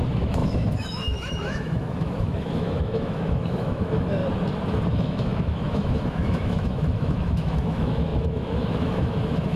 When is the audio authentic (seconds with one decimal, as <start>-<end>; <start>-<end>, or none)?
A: 4.2-4.9